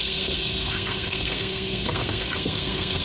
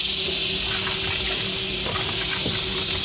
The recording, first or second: second